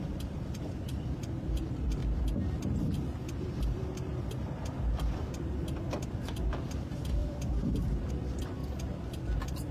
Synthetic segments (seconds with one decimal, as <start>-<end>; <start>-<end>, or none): 0.0-2.0; 2.8-8.6